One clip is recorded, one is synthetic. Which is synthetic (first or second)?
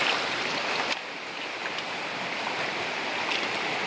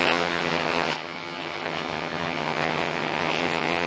second